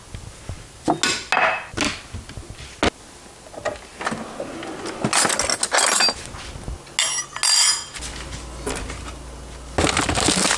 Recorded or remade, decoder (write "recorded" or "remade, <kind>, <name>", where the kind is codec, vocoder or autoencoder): recorded